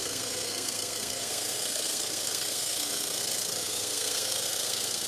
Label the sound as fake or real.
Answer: fake